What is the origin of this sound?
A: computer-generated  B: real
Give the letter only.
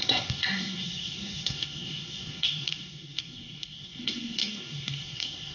A